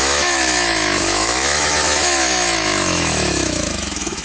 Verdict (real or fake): fake